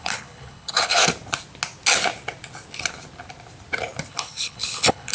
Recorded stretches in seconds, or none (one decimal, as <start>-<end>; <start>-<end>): 1.0-4.1